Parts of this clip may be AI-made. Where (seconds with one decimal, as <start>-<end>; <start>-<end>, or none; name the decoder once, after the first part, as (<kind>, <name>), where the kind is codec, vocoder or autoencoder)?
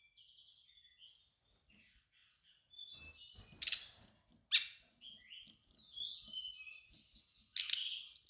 none